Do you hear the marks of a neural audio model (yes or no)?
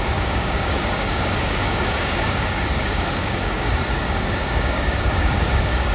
yes